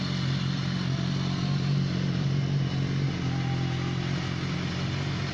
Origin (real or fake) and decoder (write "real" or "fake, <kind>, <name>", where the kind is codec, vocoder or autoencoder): real